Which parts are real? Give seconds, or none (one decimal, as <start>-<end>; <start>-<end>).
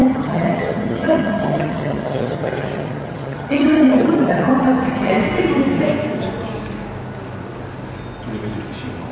5.1-9.1